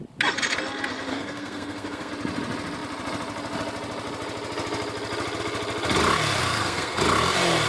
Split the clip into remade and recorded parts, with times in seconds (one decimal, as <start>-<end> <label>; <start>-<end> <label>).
0.0-1.1 recorded; 1.1-2.1 remade; 2.1-6.4 recorded; 6.4-7.0 remade; 7.0-7.7 recorded